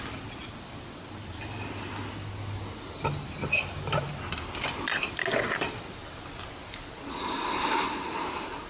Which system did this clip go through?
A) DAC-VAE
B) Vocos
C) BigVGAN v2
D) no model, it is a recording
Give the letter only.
D